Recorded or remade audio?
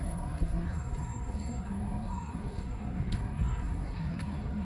remade